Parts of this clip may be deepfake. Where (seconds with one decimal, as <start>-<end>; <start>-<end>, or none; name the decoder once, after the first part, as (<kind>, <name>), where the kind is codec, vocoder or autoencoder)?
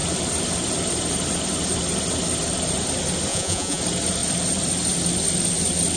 3.3-3.8 (vocoder, Vocos)